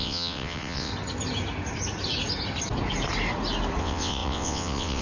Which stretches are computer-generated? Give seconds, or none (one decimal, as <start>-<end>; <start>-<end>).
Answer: 0.0-0.9; 3.8-5.0